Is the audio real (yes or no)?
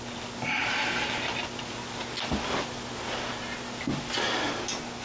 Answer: yes